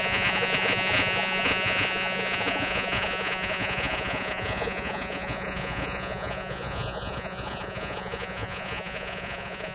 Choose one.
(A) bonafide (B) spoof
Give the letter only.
B